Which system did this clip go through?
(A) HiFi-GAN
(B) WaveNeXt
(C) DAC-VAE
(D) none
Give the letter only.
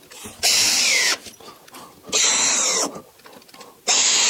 D